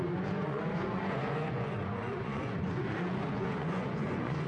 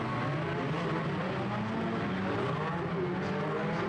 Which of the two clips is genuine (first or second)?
second